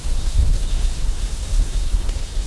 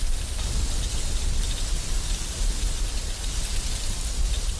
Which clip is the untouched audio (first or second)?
second